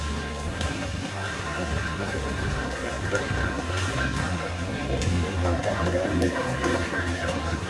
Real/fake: fake